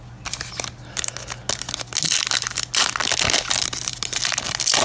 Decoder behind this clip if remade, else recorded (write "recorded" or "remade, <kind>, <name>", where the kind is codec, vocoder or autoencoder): recorded